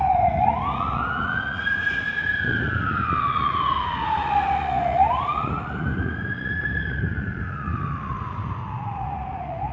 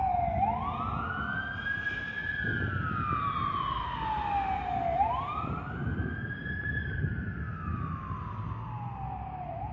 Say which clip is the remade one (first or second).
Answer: first